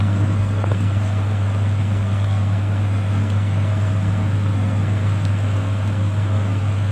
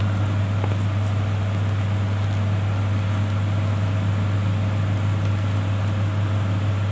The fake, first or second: first